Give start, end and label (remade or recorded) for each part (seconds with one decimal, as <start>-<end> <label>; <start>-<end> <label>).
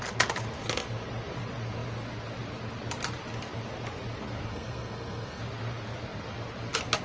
0.0-4.5 recorded; 4.5-5.4 remade; 5.4-7.0 recorded